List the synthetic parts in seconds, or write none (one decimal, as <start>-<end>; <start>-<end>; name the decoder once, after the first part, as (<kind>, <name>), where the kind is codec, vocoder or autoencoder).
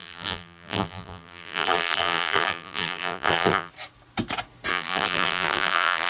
0.0-3.7 (vocoder, BigVGAN v2); 4.7-6.1